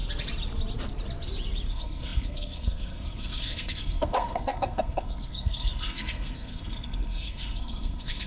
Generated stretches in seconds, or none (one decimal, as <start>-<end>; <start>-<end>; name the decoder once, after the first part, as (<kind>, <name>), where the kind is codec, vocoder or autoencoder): 1.7-8.3 (codec, SNAC)